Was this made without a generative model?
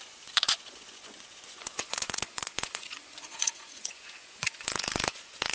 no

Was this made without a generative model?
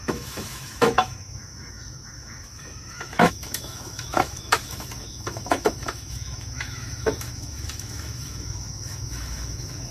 no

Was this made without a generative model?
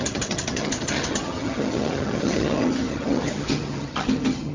no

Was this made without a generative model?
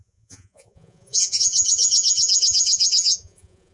no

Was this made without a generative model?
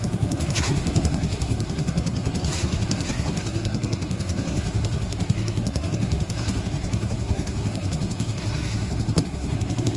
no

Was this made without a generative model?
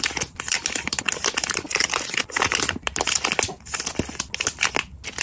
yes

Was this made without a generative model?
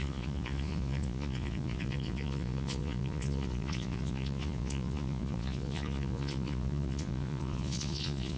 no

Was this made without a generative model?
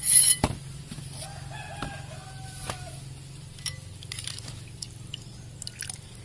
yes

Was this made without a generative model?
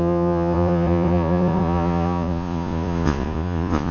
no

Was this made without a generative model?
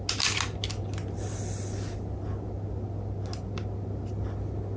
yes